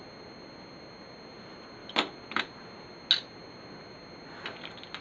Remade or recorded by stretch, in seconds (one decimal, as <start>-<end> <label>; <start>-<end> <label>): 0.0-5.0 recorded